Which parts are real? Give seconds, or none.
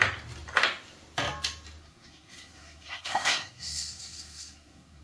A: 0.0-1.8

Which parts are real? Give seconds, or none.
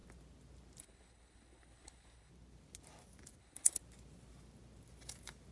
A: 0.0-0.8; 2.3-3.4; 3.8-5.5